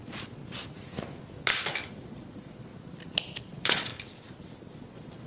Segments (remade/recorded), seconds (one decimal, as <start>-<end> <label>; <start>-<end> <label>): 0.0-0.4 remade; 0.4-1.9 recorded; 1.9-2.7 remade; 2.7-3.4 recorded; 3.4-3.9 remade; 3.9-4.7 recorded; 4.7-5.3 remade